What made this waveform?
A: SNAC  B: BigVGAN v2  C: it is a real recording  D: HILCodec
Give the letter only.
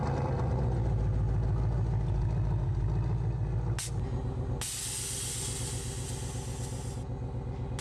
C